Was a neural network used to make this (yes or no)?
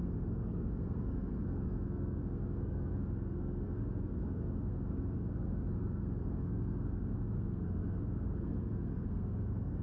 yes